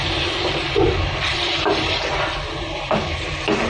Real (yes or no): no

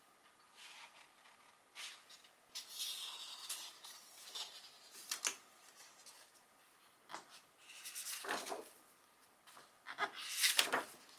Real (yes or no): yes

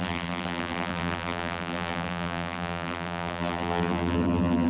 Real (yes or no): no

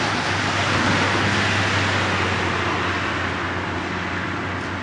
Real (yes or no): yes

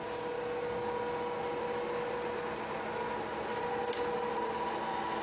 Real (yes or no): yes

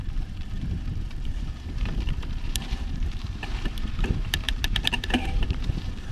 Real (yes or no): no